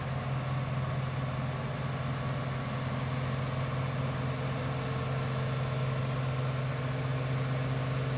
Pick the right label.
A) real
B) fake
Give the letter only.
A